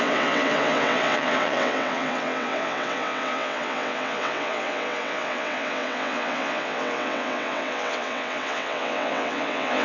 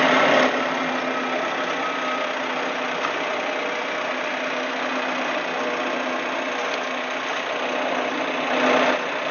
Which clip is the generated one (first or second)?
first